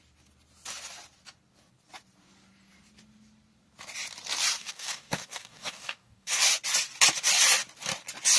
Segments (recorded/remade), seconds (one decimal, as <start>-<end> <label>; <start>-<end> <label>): 0.0-4.6 recorded; 4.6-6.4 remade; 6.4-8.4 recorded